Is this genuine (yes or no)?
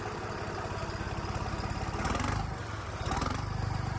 yes